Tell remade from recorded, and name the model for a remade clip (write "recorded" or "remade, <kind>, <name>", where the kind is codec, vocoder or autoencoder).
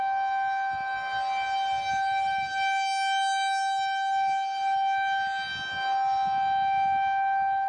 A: recorded